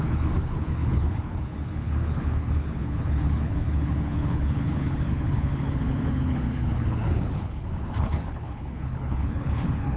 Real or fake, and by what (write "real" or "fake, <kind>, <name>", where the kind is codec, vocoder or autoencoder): fake, codec, HILCodec